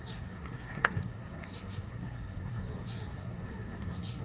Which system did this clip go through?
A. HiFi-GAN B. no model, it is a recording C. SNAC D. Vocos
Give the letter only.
C